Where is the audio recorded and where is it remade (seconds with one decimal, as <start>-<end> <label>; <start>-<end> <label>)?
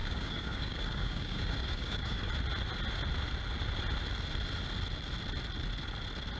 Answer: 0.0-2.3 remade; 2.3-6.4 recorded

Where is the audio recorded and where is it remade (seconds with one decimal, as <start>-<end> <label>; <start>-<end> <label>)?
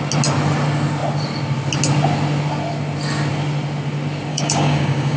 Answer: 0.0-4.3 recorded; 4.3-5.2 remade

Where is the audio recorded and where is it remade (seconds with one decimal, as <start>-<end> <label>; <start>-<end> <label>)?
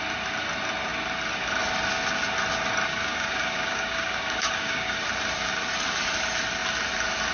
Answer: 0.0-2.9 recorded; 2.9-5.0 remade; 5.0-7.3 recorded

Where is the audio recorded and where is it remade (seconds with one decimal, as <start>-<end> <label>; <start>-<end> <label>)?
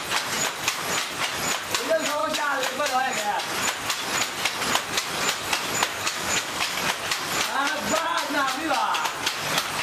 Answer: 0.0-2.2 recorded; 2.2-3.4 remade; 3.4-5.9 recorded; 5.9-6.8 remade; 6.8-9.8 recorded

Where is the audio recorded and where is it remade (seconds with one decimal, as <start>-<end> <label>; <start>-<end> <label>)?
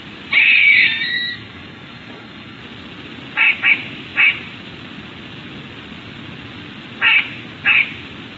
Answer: 0.0-1.1 recorded; 1.1-2.6 remade; 2.6-8.4 recorded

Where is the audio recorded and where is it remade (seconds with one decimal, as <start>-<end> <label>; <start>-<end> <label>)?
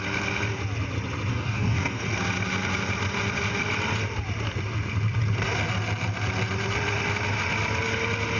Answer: 0.0-1.3 recorded; 1.3-2.0 remade; 2.0-8.4 recorded